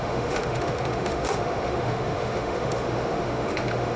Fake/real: fake